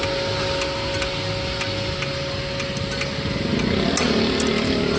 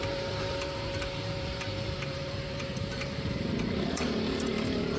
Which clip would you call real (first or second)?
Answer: first